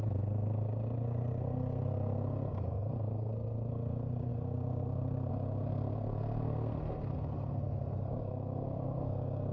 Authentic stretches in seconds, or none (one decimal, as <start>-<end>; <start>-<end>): none